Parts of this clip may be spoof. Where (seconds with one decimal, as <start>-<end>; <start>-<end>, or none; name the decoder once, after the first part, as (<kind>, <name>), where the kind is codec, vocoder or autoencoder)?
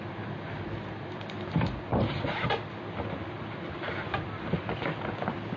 none